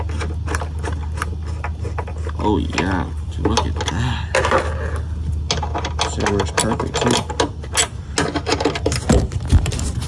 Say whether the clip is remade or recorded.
recorded